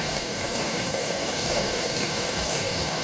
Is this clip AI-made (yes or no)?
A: yes